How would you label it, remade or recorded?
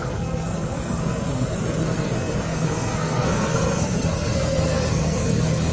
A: remade